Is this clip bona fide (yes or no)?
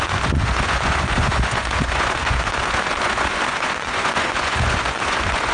no